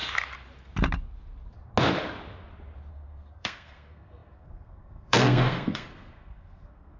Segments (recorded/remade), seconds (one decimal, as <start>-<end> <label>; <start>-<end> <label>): 0.0-2.9 recorded; 2.9-7.0 remade